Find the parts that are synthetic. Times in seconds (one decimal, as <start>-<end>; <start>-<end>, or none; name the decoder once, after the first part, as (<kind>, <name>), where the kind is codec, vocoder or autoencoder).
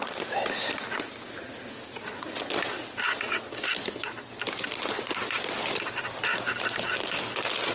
1.4-2.4 (vocoder, Vocos)